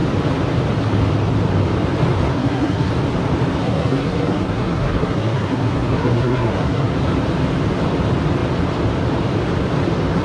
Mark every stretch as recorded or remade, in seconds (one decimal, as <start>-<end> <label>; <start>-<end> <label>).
0.0-2.3 recorded; 2.3-2.9 remade; 2.9-3.6 recorded; 3.6-6.9 remade; 6.9-10.2 recorded